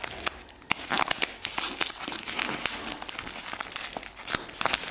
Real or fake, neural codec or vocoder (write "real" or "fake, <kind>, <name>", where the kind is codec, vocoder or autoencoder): real